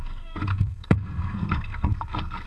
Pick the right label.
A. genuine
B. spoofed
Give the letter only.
B